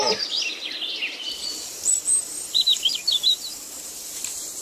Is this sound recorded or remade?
remade